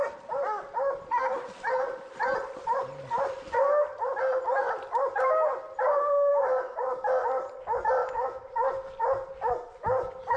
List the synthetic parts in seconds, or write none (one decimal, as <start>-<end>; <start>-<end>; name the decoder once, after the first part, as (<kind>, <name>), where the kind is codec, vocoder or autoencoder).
6.3-6.8 (autoencoder, DAC-VAE); 8.0-8.5